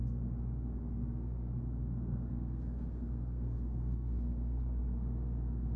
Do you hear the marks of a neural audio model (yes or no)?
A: yes